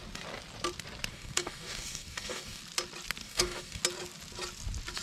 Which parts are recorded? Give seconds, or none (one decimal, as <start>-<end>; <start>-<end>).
0.0-1.1; 2.6-3.2; 3.8-5.0